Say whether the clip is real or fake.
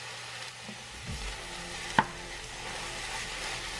real